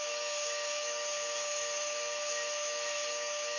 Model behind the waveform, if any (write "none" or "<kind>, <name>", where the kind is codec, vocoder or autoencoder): autoencoder, DAC-VAE